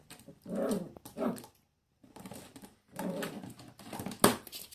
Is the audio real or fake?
real